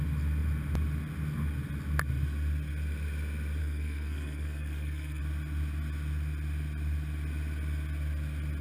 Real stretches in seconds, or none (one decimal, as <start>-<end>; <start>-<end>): 0.0-3.6; 5.2-8.6